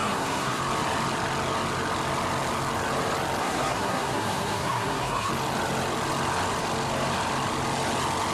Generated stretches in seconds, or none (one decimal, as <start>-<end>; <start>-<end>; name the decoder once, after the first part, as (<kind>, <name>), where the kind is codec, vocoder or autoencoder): 0.0-0.6 (codec, SNAC); 3.4-5.3